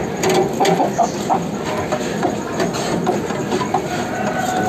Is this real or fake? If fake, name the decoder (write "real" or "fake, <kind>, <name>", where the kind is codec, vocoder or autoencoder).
real